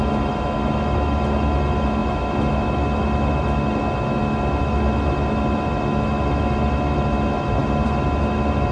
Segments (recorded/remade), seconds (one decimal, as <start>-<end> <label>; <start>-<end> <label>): 0.0-8.7 remade